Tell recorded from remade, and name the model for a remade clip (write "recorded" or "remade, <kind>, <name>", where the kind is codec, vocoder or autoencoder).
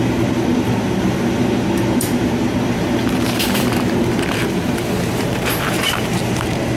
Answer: remade, vocoder, BigVGAN v2